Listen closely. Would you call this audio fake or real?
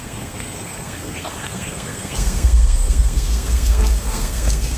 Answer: fake